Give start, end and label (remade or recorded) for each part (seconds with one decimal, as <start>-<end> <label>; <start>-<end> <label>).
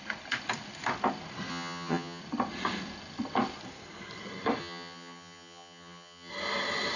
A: 0.0-1.5 recorded; 1.5-2.2 remade; 2.2-4.6 recorded; 4.6-6.3 remade; 6.3-7.0 recorded